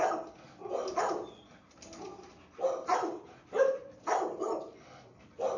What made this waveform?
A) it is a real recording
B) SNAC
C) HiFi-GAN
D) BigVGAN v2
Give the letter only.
A